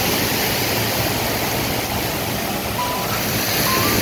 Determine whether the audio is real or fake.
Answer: fake